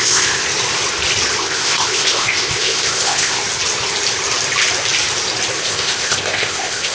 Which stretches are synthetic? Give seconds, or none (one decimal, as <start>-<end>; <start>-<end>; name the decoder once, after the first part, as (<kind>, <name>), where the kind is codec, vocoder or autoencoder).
0.0-0.4 (codec, ZipCodec); 1.4-3.4; 5.6-6.9